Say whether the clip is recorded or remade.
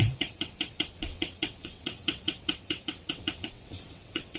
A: remade